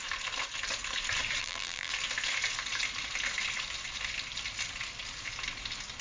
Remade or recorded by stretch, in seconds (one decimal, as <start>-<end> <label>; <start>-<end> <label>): 0.0-1.4 recorded; 1.4-1.9 remade; 1.9-6.0 recorded